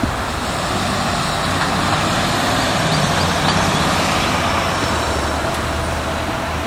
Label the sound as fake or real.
real